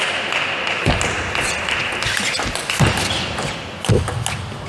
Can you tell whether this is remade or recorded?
recorded